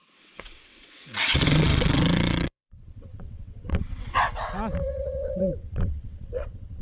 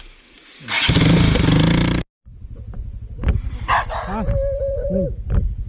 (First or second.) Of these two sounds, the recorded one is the second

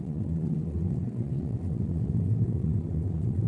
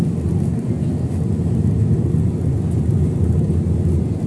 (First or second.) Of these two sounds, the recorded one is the second